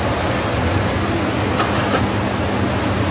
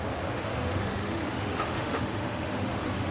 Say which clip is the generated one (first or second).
second